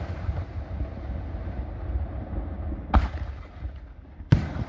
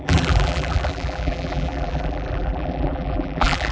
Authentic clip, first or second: first